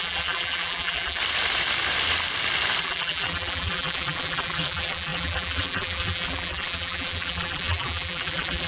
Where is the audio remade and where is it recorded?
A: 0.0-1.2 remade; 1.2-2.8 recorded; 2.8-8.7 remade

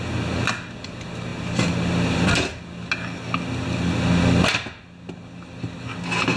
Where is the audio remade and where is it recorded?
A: 0.0-6.4 recorded

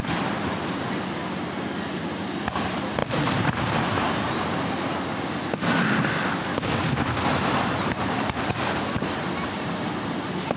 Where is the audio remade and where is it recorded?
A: 0.0-7.3 recorded; 7.3-8.6 remade; 8.6-10.6 recorded

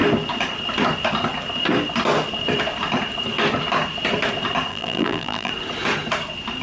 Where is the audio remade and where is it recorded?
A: 0.0-4.7 recorded; 4.7-5.5 remade; 5.5-6.6 recorded

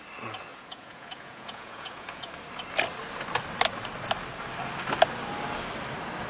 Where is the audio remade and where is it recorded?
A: 0.0-0.5 recorded; 0.5-2.3 remade; 2.3-6.3 recorded

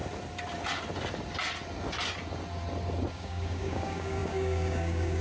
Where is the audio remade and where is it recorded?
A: 0.0-3.1 recorded; 3.1-5.2 remade

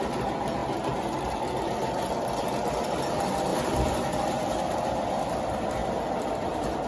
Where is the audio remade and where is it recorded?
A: 0.0-0.6 remade; 0.6-2.7 recorded; 2.7-6.9 remade

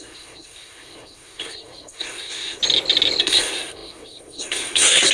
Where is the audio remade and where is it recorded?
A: 0.0-2.6 remade; 2.6-3.2 recorded; 3.2-5.1 remade